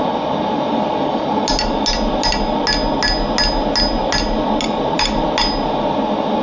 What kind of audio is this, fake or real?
real